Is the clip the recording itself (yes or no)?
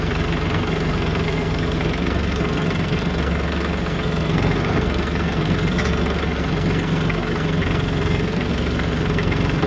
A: no